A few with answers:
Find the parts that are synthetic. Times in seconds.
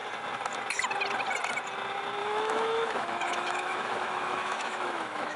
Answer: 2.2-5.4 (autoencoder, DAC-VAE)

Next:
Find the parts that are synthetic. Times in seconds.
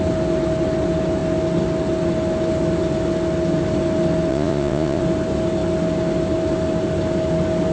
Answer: 4.3-5.0 (vocoder, Vocos)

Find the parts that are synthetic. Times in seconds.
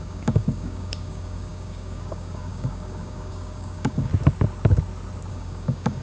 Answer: 0.0-4.1 (codec, DAC); 5.3-6.0